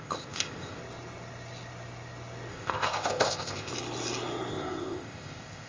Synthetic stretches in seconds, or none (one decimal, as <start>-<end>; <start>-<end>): 0.0-0.8; 2.5-3.7; 4.5-5.7